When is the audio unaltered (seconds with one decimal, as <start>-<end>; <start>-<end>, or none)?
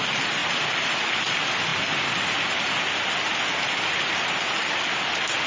0.0-5.5